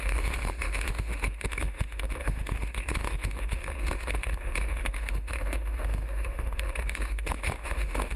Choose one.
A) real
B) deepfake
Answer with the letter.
B